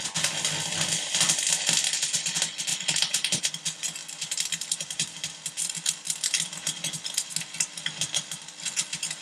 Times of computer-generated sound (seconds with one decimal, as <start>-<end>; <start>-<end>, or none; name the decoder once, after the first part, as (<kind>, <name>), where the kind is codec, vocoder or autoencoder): 2.7-3.4 (vocoder, BigVGAN v2); 4.0-7.3